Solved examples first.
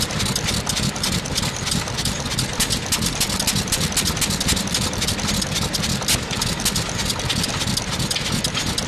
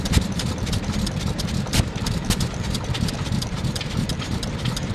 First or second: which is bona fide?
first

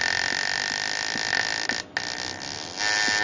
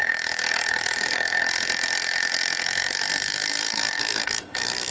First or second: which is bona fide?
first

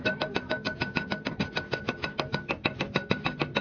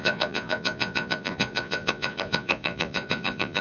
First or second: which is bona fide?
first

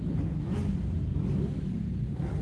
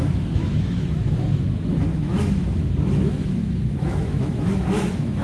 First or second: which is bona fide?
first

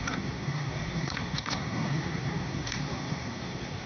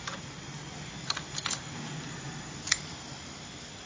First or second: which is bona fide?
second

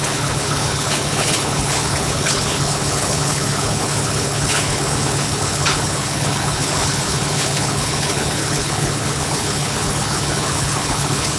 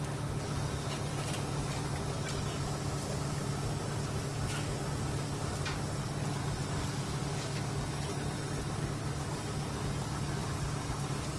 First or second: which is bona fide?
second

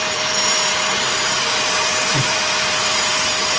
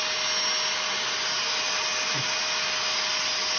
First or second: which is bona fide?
second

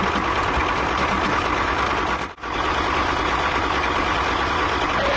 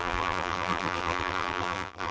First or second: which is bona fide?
first